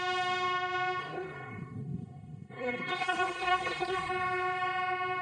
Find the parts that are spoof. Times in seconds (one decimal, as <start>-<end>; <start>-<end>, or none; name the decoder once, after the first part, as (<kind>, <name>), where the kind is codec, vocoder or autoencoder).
1.0-4.1 (codec, SNAC)